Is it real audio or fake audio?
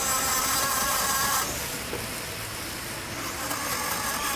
real